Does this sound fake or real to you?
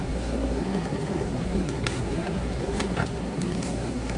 fake